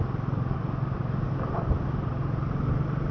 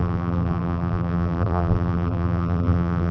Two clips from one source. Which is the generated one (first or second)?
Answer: second